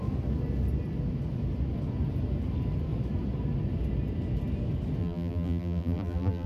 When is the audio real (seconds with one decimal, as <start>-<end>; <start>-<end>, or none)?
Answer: 0.0-5.0